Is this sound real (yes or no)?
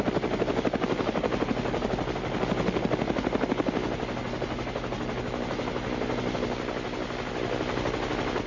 yes